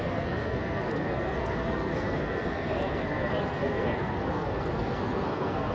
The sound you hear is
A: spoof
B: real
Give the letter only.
A